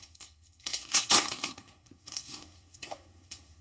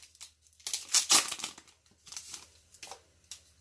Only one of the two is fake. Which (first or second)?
first